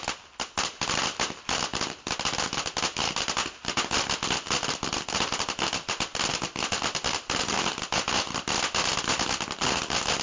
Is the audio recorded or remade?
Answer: recorded